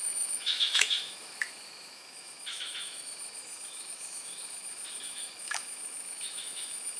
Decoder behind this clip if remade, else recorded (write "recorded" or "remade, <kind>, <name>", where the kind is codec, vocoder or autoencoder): remade, autoencoder, DAC-VAE